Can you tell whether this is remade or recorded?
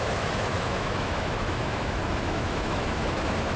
remade